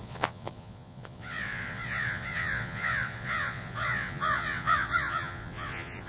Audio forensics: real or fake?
fake